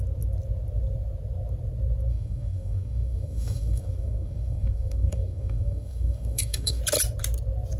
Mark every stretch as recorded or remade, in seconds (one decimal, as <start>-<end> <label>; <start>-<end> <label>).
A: 0.0-2.1 recorded; 2.1-6.8 remade; 6.8-7.8 recorded